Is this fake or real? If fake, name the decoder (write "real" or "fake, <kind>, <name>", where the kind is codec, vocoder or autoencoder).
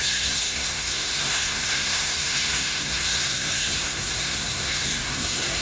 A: fake, codec, SNAC